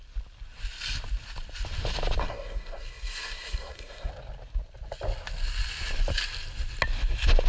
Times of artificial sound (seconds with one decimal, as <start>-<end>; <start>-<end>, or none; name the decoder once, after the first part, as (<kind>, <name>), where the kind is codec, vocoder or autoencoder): 2.2-4.1 (codec, SNAC)